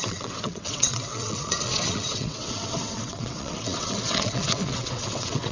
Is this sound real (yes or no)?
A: no